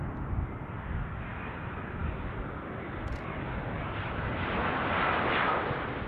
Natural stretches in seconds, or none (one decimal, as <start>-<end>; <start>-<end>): 0.0-6.1